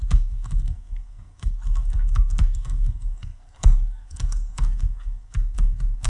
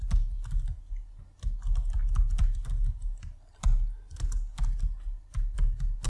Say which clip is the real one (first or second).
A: second